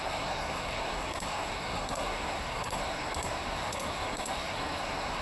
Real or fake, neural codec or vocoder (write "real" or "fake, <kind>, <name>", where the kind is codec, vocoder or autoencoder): fake, codec, SNAC